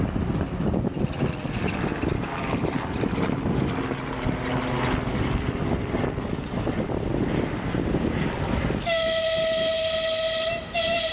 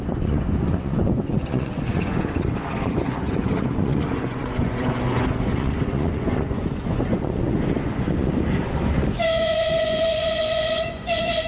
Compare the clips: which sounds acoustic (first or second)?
first